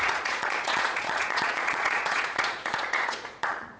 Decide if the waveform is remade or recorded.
remade